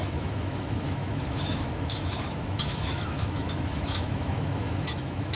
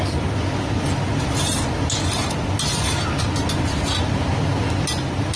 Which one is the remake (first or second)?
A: first